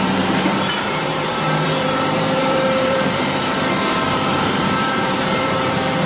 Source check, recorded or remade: remade